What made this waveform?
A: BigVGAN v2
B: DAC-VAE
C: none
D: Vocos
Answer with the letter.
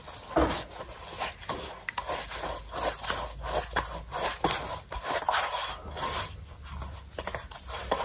C